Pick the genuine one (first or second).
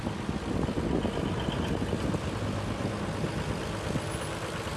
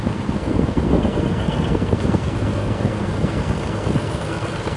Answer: first